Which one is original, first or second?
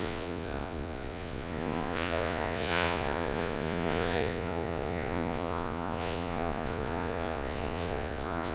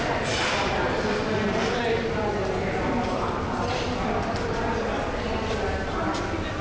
second